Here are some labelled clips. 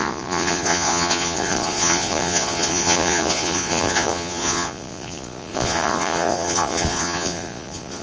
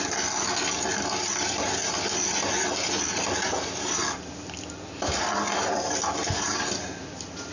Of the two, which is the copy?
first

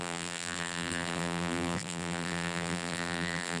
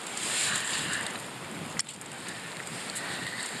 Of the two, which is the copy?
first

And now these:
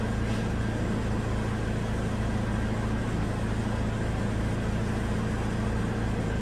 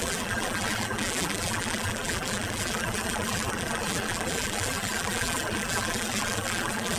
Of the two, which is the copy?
second